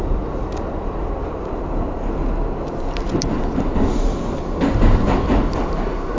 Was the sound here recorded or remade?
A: recorded